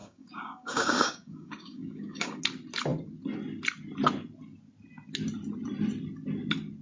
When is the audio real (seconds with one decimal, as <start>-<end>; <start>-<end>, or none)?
2.4-6.8